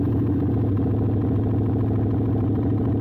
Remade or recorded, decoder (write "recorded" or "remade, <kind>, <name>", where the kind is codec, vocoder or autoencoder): recorded